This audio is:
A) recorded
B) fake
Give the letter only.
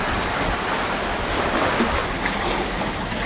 B